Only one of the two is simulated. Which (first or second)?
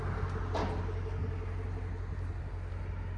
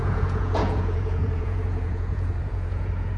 second